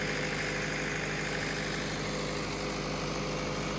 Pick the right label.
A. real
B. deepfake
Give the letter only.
A